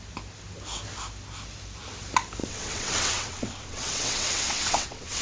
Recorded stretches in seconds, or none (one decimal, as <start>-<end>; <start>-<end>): 0.0-2.4